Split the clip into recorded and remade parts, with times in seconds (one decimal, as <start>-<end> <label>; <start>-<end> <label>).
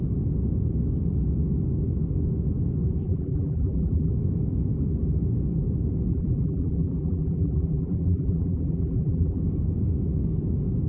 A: 0.0-3.0 recorded; 3.0-4.1 remade; 4.1-6.1 recorded; 6.1-9.4 remade; 9.4-10.9 recorded